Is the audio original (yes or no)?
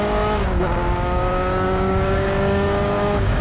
no